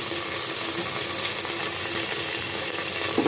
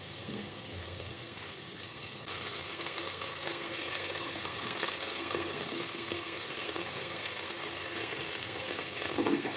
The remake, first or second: second